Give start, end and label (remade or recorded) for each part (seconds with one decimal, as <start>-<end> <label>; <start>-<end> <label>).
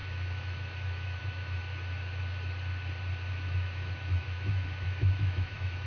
0.0-1.6 remade; 1.6-3.3 recorded; 3.3-5.9 remade